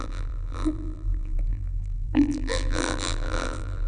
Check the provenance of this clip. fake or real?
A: fake